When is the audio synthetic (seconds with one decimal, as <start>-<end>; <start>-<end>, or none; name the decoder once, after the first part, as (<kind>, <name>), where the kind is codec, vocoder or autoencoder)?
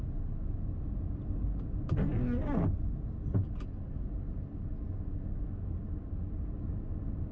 none